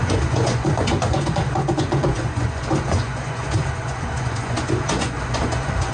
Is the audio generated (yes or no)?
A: yes